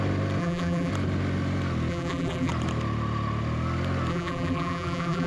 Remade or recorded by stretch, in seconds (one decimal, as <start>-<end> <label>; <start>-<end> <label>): 0.0-0.4 recorded; 0.4-0.9 remade; 0.9-1.9 recorded; 1.9-2.5 remade; 2.5-4.1 recorded; 4.1-5.3 remade